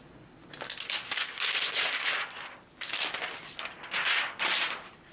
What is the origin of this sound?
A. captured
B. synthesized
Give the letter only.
A